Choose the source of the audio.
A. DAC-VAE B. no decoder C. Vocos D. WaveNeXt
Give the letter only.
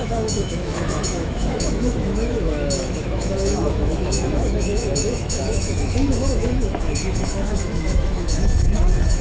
A